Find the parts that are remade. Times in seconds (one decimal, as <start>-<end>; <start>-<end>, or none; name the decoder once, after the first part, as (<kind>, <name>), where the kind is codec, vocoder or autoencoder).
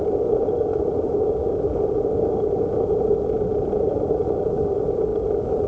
none